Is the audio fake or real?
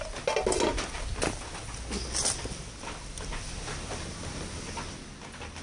real